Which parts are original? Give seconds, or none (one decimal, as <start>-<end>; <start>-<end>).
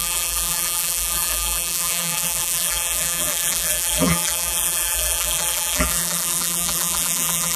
none